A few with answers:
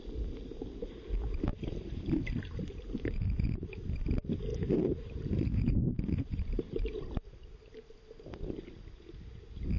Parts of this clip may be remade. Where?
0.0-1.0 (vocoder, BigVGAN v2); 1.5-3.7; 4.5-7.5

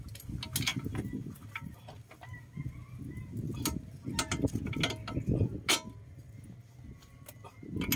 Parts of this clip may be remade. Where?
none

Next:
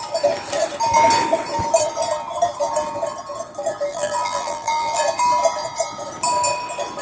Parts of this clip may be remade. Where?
3.9-5.0 (vocoder, BigVGAN v2)

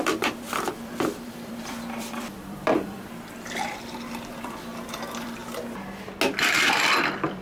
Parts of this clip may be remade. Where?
0.0-5.4 (vocoder, BigVGAN v2); 6.4-7.4

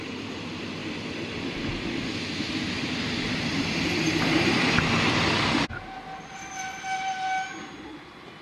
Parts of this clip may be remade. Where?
none

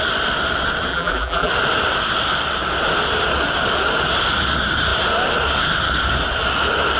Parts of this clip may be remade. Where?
0.9-1.5 (vocoder, BigVGAN v2)

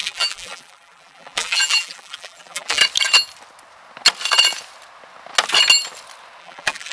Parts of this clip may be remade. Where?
0.0-2.8 (vocoder, BigVGAN v2); 6.4-6.9